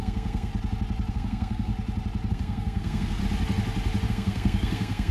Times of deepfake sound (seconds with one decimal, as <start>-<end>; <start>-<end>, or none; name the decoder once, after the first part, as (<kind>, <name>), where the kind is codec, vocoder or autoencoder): 0.0-0.5 (codec, SNAC); 1.1-1.7; 2.3-3.2; 4.1-5.1